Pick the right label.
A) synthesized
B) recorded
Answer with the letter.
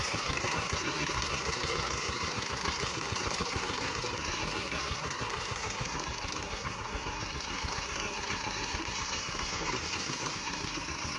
A